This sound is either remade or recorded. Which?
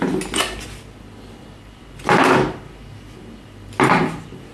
recorded